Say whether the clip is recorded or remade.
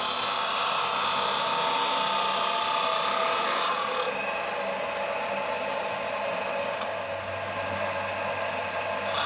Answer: recorded